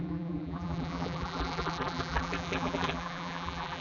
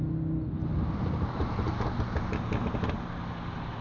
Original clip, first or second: second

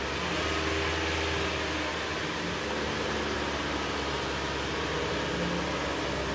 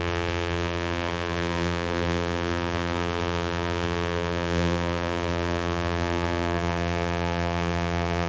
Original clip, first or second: first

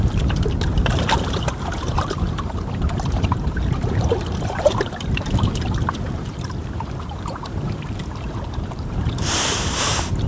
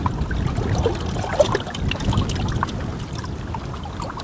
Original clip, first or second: second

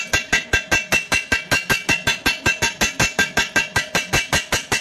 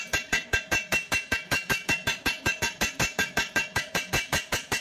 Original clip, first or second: first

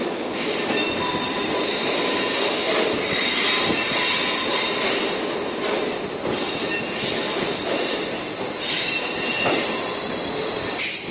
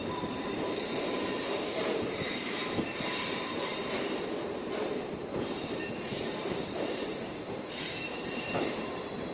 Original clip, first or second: first